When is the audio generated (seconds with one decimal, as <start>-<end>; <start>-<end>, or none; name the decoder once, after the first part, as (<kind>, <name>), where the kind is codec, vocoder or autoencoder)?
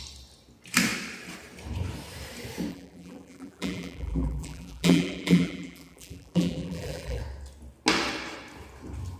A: 2.7-7.2 (vocoder, BigVGAN v2)